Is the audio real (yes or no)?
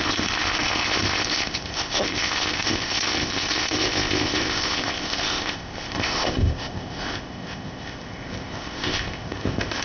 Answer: no